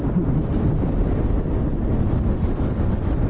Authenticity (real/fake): real